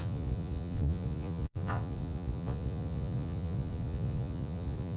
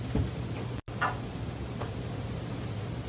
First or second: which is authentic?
second